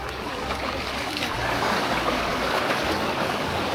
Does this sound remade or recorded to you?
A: remade